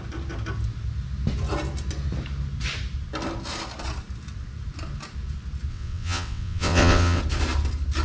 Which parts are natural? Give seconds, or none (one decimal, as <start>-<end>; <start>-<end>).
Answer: 0.0-5.7; 7.2-8.0